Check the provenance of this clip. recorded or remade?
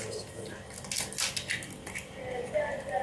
recorded